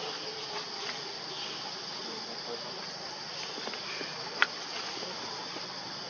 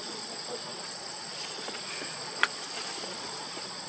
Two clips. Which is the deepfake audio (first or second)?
second